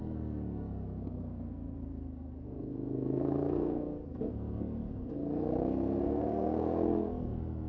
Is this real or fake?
fake